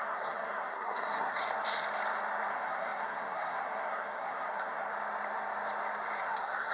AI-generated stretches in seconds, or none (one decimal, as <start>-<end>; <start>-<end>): 0.0-1.4; 2.5-4.9; 6.2-6.7